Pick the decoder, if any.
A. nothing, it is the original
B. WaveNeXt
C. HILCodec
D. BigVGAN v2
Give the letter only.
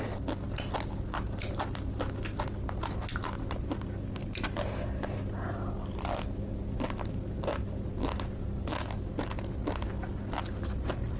A